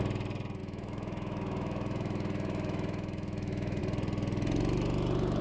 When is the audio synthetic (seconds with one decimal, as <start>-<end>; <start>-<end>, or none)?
0.6-3.8